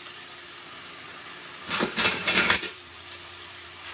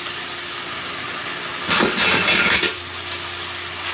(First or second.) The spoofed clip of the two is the first